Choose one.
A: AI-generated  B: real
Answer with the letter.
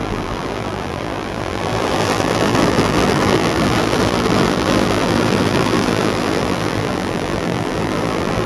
A